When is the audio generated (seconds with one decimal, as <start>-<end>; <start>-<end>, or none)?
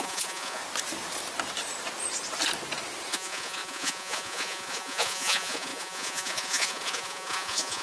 0.0-0.6; 3.1-7.8